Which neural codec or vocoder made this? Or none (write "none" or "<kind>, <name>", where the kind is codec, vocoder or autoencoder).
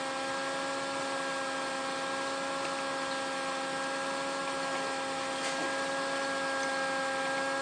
none